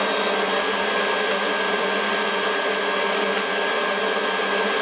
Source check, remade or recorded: recorded